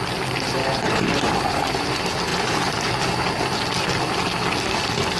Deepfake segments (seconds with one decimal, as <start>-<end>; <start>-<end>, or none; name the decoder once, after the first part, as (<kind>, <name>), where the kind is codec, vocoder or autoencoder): 0.6-1.3 (vocoder, BigVGAN v2); 2.3-2.9